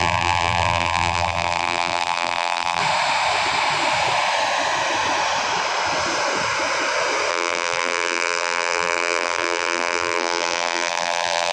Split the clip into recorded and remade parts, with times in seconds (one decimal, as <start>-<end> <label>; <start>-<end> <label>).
0.0-2.8 remade; 2.8-7.3 recorded; 7.3-11.5 remade